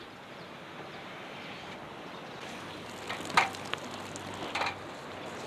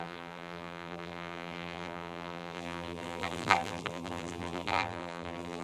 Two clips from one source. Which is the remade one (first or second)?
second